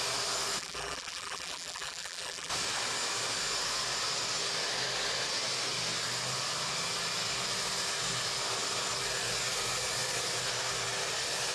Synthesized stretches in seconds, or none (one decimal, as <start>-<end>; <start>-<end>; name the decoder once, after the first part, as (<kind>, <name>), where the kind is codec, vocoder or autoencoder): 0.6-2.5 (vocoder, BigVGAN v2)